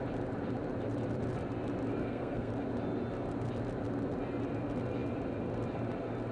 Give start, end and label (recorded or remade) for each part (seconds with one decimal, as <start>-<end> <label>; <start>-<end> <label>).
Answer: 0.0-2.0 recorded; 2.0-2.5 remade; 2.5-6.3 recorded